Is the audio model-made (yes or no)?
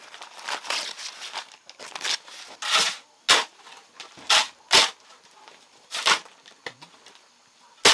no